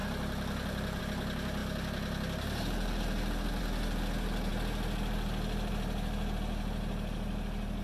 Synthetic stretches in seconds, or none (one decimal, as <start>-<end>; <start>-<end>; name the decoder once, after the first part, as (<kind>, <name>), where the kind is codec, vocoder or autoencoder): 0.0-1.0 (vocoder, BigVGAN v2)

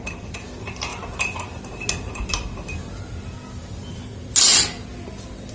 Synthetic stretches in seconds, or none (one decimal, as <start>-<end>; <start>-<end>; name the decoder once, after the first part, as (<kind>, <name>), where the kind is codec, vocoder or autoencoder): none